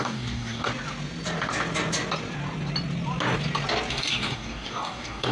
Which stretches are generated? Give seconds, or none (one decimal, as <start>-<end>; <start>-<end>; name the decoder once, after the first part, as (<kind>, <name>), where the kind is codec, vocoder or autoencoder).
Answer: 0.0-0.7 (codec, DAC); 3.9-5.3